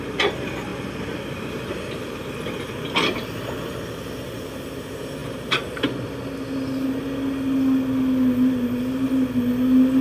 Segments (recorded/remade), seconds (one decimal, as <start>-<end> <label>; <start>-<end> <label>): 0.0-10.0 recorded

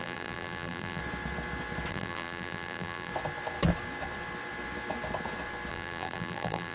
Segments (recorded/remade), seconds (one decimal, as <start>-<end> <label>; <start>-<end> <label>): 0.0-1.0 remade; 1.0-1.9 recorded; 1.9-3.1 remade; 3.1-5.7 recorded; 5.7-6.7 remade

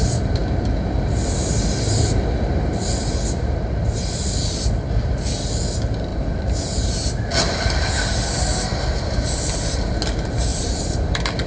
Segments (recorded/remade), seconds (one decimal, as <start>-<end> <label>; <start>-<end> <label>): 0.0-6.1 recorded; 6.1-6.9 remade; 6.9-10.5 recorded; 10.5-11.1 remade; 11.1-11.5 recorded

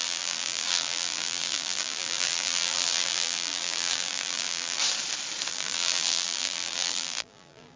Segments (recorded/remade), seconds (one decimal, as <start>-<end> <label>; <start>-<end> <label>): 0.0-4.8 remade; 4.8-5.5 recorded; 5.5-7.8 remade